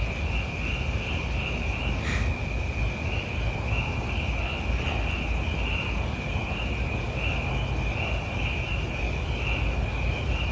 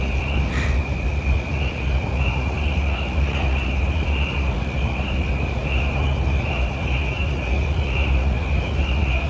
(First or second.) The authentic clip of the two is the first